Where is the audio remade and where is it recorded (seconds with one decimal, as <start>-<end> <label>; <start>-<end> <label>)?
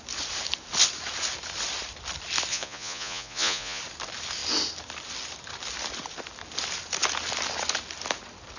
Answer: 0.0-2.5 recorded; 2.5-3.8 remade; 3.8-8.6 recorded